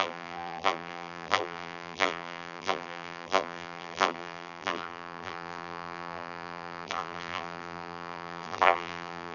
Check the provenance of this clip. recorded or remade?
remade